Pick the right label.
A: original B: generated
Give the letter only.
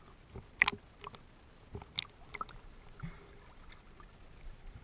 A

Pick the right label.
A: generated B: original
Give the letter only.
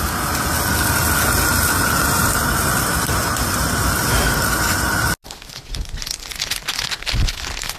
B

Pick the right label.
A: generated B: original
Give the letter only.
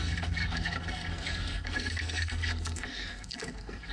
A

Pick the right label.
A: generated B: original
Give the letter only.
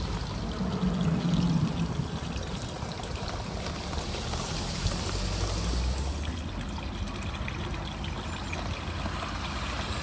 B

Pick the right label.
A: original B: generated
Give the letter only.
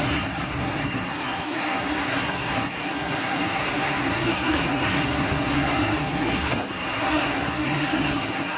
B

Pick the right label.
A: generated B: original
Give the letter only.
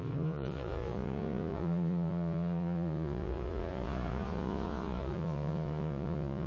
A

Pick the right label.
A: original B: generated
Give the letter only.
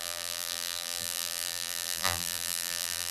B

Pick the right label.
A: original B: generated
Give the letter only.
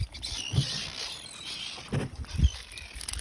A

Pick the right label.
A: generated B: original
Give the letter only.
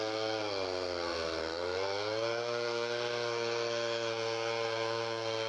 A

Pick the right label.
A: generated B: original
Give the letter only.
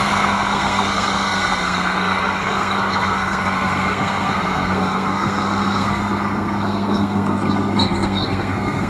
A